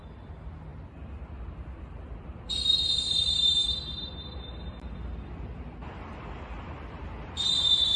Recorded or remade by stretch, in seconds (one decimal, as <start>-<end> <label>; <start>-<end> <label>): 0.0-8.0 remade